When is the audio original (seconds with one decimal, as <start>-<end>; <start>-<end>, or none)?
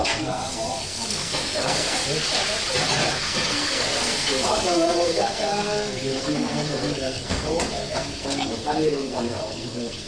2.0-3.2